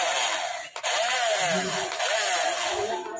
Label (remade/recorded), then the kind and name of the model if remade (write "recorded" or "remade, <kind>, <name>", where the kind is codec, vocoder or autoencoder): recorded